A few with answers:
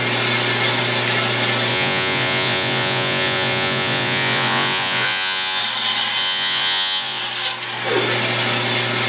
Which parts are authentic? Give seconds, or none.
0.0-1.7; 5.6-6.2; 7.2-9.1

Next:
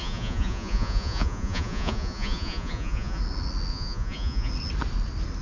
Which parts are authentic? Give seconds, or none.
3.2-3.7; 4.5-5.4

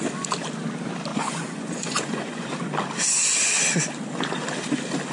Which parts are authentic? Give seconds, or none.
0.0-1.1; 2.5-5.1